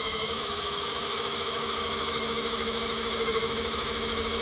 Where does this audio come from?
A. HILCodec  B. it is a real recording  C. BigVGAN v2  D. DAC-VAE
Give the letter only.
D